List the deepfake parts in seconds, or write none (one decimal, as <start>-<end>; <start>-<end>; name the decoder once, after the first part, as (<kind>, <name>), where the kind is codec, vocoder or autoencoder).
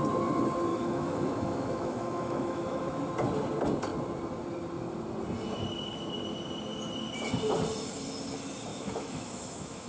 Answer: 0.7-2.9 (autoencoder, DAC-VAE); 8.7-9.9